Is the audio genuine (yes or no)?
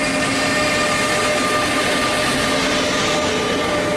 yes